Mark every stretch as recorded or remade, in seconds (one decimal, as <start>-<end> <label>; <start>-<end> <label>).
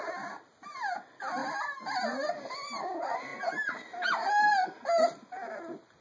0.0-6.0 recorded